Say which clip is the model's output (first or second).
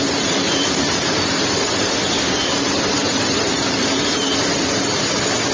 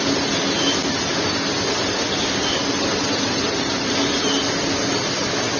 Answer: first